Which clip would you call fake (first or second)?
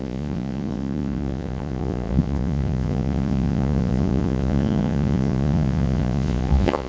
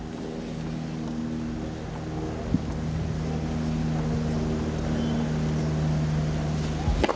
first